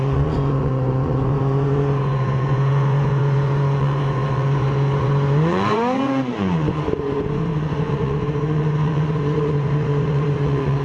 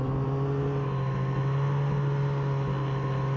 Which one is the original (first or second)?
second